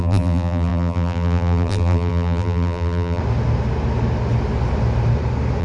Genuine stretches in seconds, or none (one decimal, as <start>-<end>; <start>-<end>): 3.2-5.6